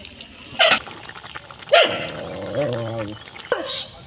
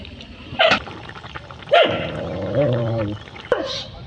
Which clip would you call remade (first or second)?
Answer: second